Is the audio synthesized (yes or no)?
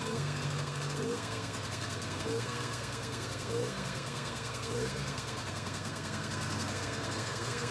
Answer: yes